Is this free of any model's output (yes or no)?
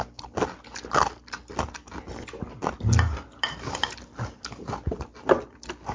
yes